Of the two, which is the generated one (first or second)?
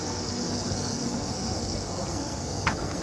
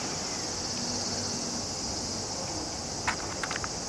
first